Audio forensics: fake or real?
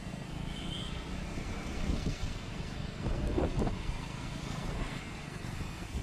fake